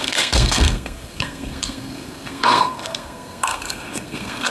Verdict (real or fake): fake